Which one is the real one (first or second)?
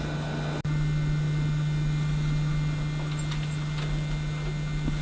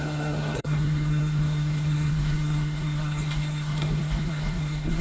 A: first